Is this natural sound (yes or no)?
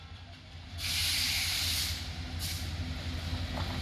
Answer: yes